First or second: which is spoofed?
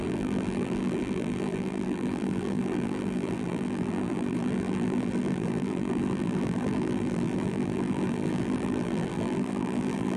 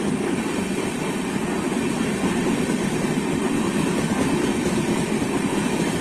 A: first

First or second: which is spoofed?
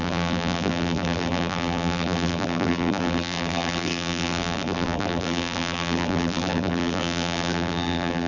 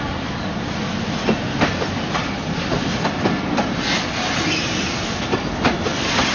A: first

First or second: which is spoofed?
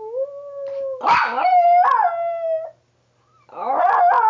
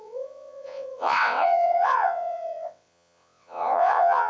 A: second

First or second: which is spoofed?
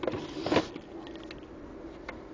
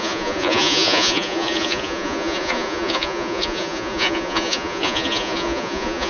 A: second